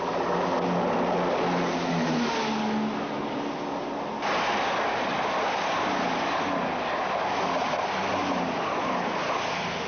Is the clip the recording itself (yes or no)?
yes